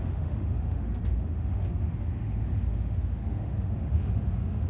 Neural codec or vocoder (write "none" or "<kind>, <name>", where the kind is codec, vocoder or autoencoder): autoencoder, DAC-VAE